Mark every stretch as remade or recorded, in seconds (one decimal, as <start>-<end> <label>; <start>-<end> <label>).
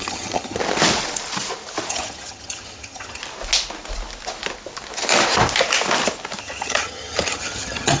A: 0.0-0.6 remade; 0.6-1.9 recorded; 1.9-3.2 remade; 3.2-6.4 recorded; 6.4-8.0 remade